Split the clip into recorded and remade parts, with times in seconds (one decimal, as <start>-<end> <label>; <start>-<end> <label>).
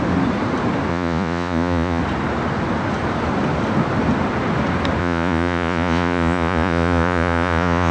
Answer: 0.0-0.9 recorded; 0.9-2.0 remade; 2.0-5.0 recorded; 5.0-7.9 remade